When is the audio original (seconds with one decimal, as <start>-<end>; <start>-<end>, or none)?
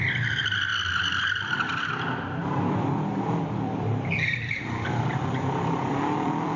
0.0-2.4